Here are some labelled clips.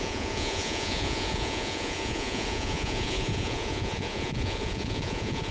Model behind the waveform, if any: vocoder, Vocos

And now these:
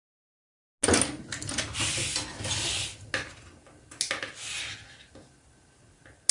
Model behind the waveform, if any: none